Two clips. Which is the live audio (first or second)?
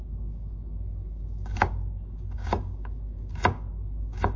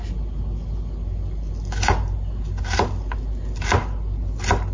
second